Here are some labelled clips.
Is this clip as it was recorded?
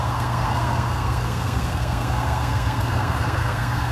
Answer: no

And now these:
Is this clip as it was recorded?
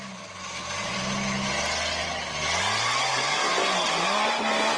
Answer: yes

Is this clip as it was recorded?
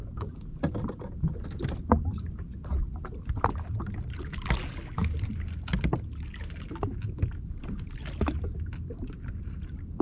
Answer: yes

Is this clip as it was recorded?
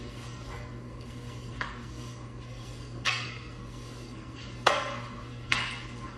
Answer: no